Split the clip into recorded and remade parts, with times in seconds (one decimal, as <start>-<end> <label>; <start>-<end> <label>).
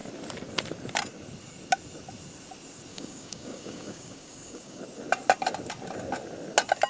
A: 0.0-2.9 recorded; 2.9-4.8 remade; 4.8-6.9 recorded